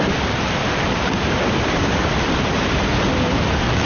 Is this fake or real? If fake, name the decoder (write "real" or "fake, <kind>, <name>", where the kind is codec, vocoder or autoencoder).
real